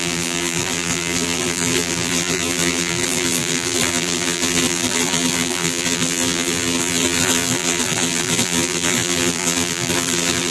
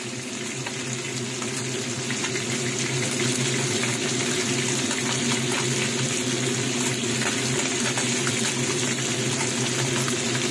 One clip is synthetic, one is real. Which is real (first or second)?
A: second